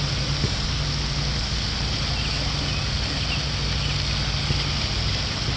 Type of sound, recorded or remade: recorded